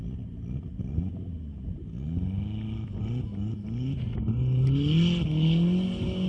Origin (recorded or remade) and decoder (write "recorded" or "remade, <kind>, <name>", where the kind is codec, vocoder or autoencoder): recorded